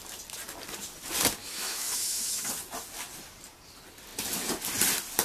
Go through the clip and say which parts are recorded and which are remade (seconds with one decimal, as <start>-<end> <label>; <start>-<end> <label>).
0.0-1.4 recorded; 1.4-2.5 remade; 2.5-5.2 recorded